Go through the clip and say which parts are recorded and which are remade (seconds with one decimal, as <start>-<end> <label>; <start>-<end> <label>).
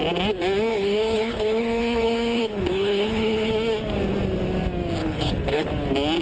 0.0-0.7 recorded; 0.7-3.5 remade; 3.5-5.0 recorded; 5.0-5.7 remade; 5.7-6.2 recorded